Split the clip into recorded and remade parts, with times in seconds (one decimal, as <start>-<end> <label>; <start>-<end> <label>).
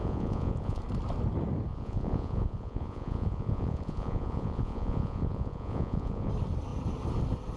0.0-0.8 remade; 0.8-1.7 recorded; 1.7-6.3 remade; 6.3-7.6 recorded